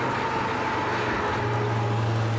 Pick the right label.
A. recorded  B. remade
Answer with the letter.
A